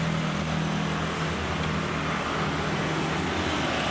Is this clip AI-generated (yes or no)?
no